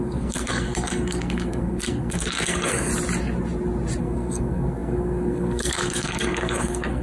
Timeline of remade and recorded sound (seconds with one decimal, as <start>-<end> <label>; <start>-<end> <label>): 0.0-2.9 remade; 2.9-4.0 recorded; 4.0-7.0 remade